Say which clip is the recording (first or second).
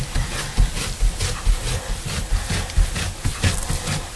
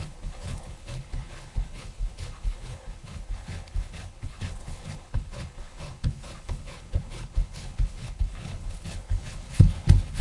first